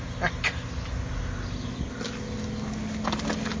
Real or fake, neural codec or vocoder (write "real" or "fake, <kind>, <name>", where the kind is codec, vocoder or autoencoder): real